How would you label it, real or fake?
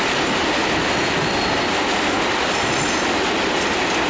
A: real